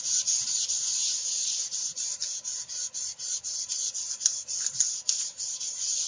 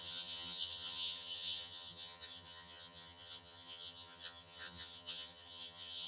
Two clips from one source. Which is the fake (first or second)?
second